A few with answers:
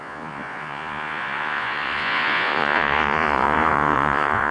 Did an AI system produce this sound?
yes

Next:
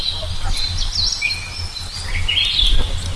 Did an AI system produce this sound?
no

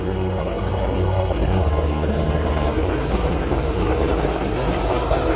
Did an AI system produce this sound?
yes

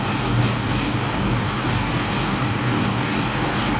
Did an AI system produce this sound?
yes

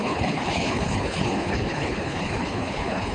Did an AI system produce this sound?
yes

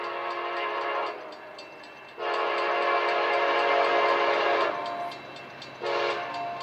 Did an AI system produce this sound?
no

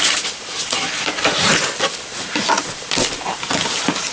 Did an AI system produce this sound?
no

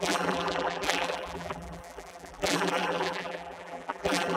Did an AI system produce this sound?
yes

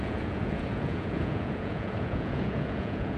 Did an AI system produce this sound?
yes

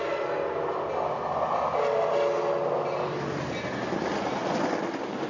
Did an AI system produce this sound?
no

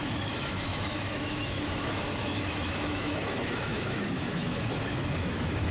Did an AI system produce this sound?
yes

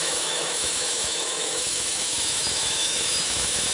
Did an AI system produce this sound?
yes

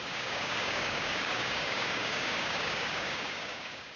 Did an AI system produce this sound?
yes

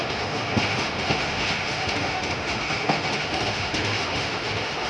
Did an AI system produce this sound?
yes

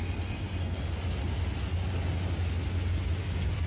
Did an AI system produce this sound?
no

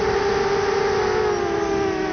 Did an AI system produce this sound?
no